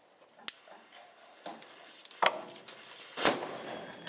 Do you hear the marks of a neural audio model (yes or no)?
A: no